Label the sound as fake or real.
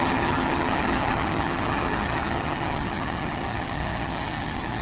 fake